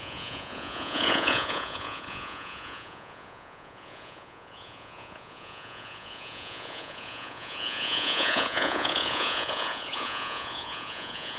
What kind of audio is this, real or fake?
fake